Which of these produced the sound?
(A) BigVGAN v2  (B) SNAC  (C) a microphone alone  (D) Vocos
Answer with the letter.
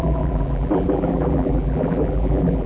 A